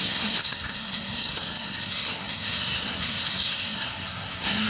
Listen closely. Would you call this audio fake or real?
fake